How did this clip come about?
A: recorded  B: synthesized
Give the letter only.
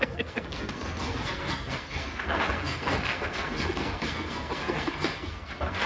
B